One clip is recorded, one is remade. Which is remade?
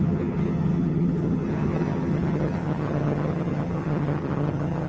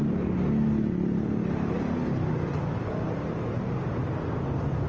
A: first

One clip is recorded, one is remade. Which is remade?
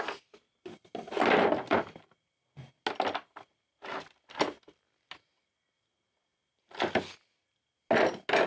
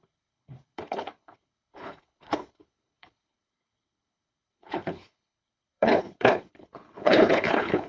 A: second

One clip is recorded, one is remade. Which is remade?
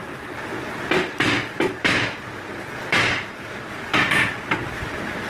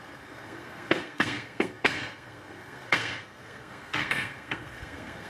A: second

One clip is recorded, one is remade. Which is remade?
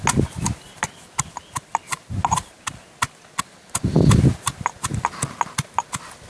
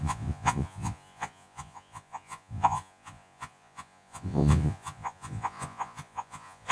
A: second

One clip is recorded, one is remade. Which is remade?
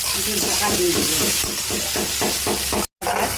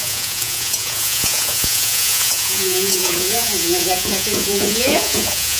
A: second